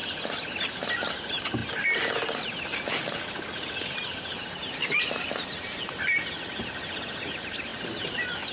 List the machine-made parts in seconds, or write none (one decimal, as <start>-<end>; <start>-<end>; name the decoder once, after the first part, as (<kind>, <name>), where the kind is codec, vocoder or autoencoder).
none